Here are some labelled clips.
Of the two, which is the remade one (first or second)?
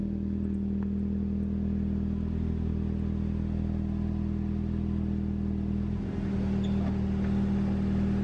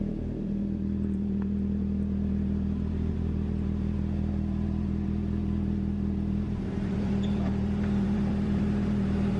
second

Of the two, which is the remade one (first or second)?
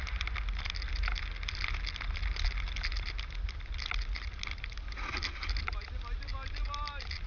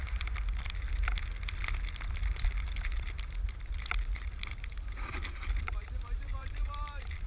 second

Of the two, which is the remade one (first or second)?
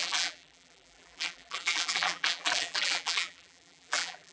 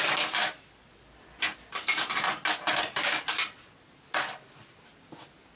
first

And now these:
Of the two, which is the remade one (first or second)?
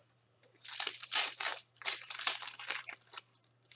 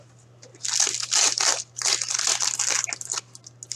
first